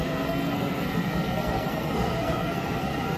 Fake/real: fake